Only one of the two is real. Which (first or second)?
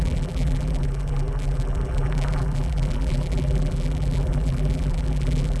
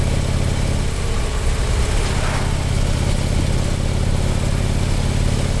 second